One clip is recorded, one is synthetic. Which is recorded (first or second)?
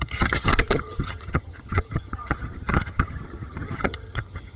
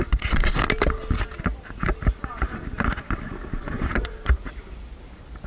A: second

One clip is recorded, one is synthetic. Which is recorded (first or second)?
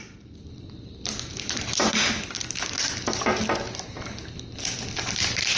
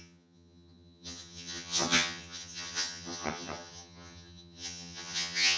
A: first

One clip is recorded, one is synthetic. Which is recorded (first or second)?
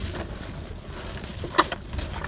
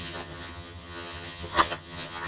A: first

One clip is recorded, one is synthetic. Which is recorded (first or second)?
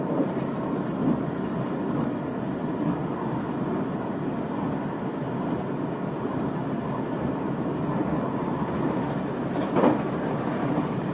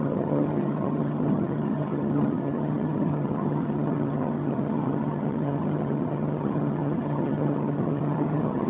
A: first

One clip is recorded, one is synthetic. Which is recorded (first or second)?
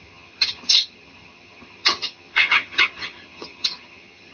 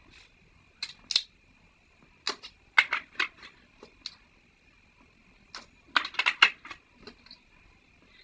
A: second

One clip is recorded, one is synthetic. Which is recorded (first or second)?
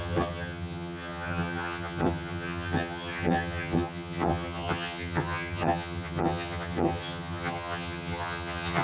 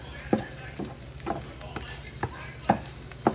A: second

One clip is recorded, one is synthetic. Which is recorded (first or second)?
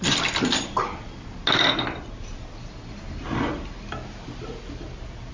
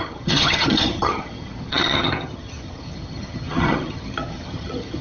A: first